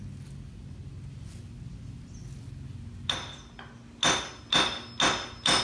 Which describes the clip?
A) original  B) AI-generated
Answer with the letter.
A